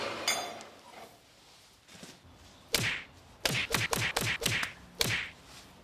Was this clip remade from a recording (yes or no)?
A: no